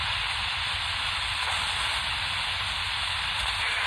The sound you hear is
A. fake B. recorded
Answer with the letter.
B